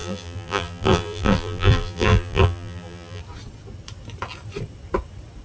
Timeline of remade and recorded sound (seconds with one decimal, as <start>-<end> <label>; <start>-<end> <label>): 0.0-3.2 remade; 3.2-5.4 recorded